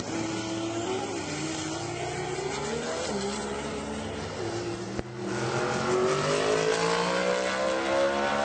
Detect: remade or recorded recorded